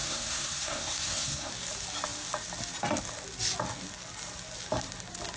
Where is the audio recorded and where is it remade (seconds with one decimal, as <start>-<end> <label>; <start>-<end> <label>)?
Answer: 0.0-1.5 remade; 1.5-5.4 recorded